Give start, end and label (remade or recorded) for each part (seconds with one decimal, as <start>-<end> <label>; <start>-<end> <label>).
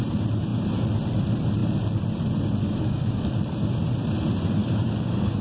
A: 0.0-2.6 recorded; 2.6-3.3 remade; 3.3-4.6 recorded; 4.6-5.4 remade